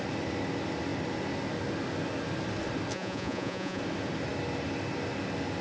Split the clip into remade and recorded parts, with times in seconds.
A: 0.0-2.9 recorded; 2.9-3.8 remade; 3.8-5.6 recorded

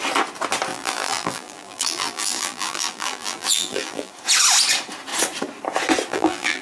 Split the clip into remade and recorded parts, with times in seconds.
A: 0.0-0.7 recorded; 0.7-4.1 remade; 4.1-6.1 recorded; 6.1-6.6 remade

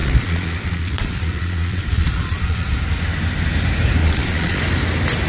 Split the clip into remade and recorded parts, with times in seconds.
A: 0.0-2.8 remade; 2.8-4.0 recorded; 4.0-4.6 remade; 4.6-5.3 recorded

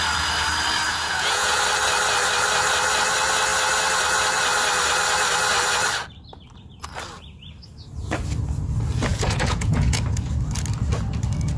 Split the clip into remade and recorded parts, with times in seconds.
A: 0.0-0.9 recorded; 0.9-1.6 remade; 1.6-9.1 recorded; 9.1-10.0 remade; 10.0-11.6 recorded

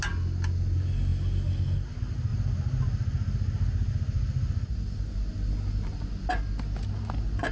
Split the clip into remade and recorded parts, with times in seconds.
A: 0.0-7.5 recorded

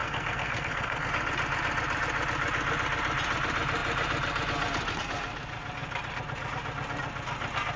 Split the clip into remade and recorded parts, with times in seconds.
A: 0.0-1.1 remade; 1.1-7.8 recorded

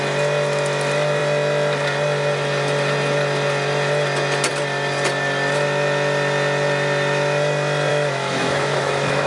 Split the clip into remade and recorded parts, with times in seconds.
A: 0.0-7.9 recorded; 7.9-9.3 remade